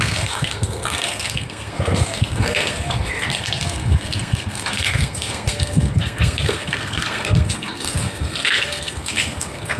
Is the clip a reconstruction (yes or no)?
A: yes